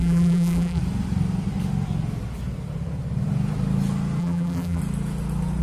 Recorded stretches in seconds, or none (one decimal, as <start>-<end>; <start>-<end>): 0.8-4.2; 4.8-5.6